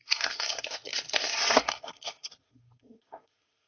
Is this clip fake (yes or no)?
yes